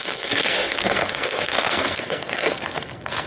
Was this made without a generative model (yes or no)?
no